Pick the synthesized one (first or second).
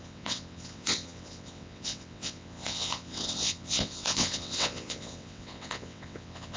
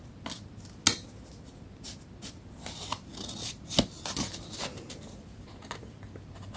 first